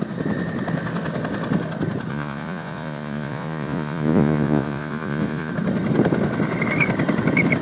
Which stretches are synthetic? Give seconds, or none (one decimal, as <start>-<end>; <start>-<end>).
2.1-5.5